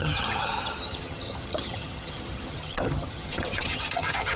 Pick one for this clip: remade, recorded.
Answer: remade